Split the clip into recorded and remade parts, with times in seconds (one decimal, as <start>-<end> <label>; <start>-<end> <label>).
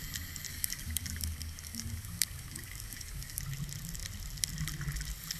0.0-0.5 recorded; 0.5-3.4 remade; 3.4-5.4 recorded